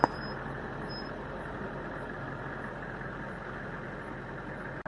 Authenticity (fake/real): real